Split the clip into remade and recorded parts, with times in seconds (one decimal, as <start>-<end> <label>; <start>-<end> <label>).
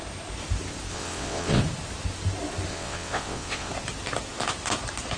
0.0-0.9 recorded; 0.9-1.6 remade; 1.6-2.7 recorded; 2.7-3.7 remade; 3.7-5.2 recorded